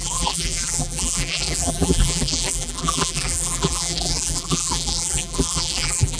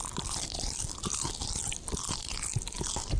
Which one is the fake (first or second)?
first